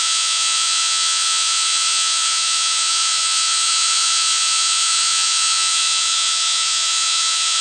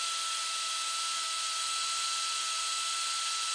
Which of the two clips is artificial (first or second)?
first